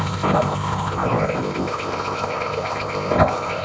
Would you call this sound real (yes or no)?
no